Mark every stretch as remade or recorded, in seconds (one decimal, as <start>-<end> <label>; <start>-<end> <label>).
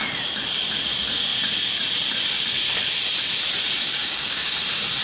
0.0-4.0 recorded; 4.0-4.6 remade; 4.6-5.0 recorded